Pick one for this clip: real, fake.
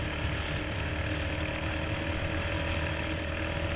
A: real